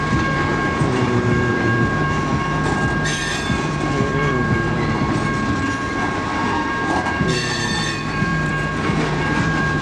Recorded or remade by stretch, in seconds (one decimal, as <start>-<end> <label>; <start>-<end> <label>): 0.0-2.3 remade; 2.3-3.2 recorded; 3.2-9.8 remade